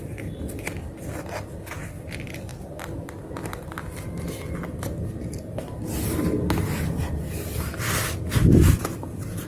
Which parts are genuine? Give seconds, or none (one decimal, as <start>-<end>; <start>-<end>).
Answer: 0.0-9.5